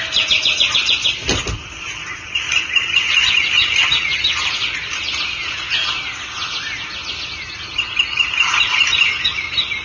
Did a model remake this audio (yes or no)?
no